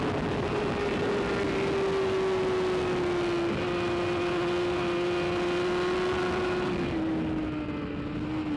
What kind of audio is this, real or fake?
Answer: real